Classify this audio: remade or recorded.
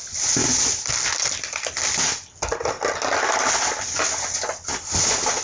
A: recorded